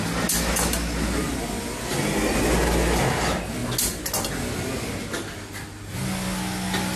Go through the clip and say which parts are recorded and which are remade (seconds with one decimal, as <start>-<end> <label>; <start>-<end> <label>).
0.0-7.0 recorded